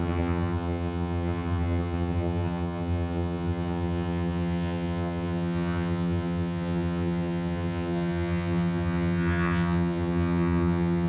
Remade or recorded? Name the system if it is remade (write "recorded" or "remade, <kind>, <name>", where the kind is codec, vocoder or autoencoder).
remade, vocoder, HiFi-GAN